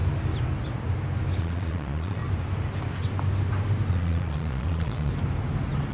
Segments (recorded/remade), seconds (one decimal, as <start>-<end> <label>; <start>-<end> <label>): 0.0-1.4 recorded; 1.4-2.2 remade; 2.2-3.9 recorded; 3.9-5.1 remade; 5.1-5.9 recorded